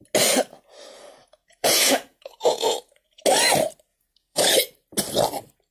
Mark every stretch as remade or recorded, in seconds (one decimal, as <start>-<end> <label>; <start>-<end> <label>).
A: 0.0-1.2 recorded; 1.2-3.2 remade; 3.2-3.9 recorded; 3.9-4.5 remade; 4.5-5.7 recorded